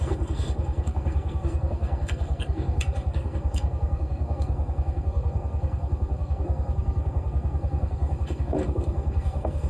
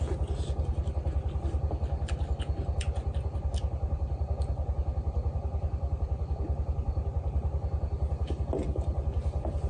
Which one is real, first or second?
second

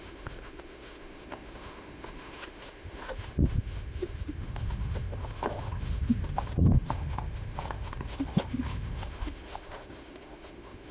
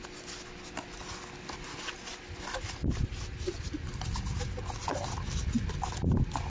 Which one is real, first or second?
second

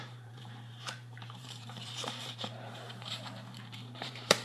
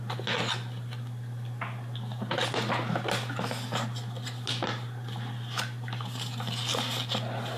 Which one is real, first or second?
second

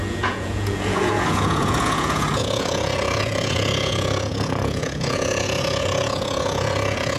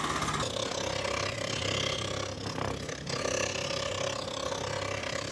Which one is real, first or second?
second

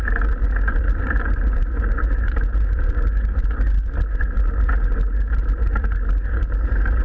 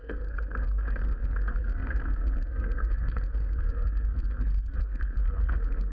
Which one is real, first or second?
first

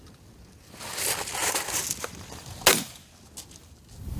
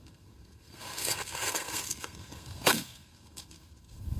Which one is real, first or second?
first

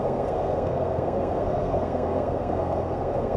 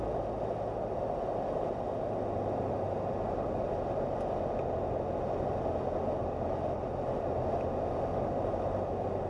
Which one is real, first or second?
second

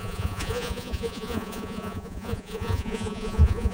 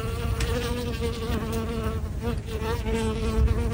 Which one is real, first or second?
second